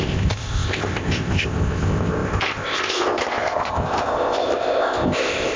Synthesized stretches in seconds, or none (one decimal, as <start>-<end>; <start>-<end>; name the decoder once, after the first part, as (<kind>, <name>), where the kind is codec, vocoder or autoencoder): 0.0-5.6 (codec, ZipCodec)